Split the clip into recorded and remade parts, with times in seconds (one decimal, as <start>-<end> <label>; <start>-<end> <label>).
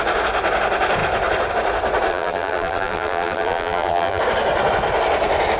0.0-2.1 recorded; 2.1-4.2 remade; 4.2-5.6 recorded